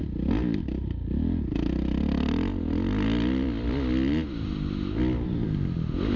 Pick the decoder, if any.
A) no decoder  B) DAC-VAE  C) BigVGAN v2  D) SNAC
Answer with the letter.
A